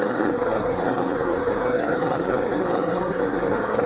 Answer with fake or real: fake